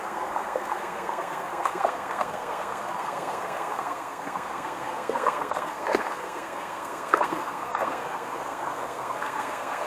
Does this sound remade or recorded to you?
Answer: remade